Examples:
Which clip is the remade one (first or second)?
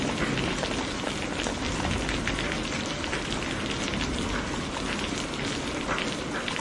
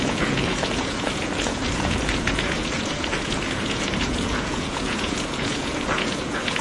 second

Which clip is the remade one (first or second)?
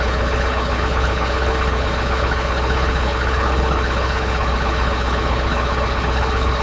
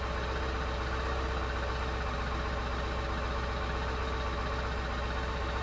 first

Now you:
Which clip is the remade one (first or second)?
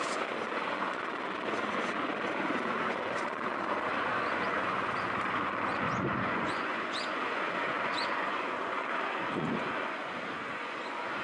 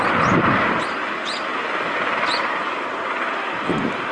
first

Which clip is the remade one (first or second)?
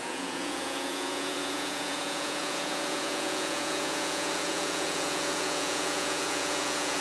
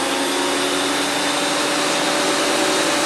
first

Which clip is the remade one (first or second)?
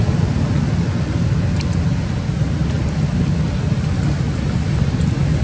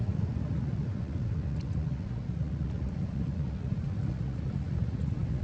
second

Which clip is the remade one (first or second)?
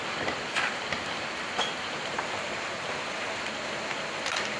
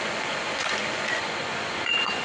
second